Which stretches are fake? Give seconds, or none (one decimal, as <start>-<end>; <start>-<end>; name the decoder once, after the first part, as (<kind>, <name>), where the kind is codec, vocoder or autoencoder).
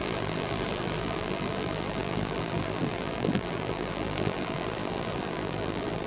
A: 0.0-6.1 (vocoder, BigVGAN v2)